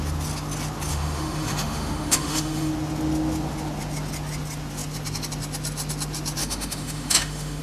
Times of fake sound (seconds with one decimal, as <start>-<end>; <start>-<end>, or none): 0.9-2.7; 6.4-7.6